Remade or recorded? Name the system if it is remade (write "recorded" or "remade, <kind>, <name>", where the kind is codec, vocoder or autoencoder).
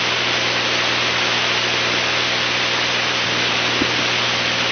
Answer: recorded